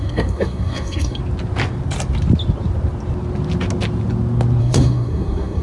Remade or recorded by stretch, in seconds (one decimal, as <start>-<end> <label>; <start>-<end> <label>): 0.0-1.2 remade; 1.2-4.6 recorded; 4.6-5.6 remade